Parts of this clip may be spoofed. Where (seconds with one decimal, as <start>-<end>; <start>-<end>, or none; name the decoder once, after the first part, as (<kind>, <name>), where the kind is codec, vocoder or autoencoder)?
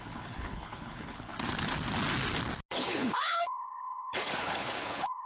0.0-1.3 (codec, HILCodec); 2.7-5.3